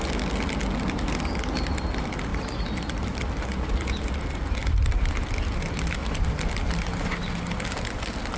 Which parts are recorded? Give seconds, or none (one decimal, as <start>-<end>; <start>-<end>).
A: 0.0-2.3; 4.1-4.6; 5.1-6.0; 6.9-8.4